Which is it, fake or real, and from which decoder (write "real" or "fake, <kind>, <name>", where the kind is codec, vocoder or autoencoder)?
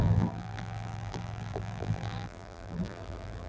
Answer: fake, vocoder, BigVGAN v2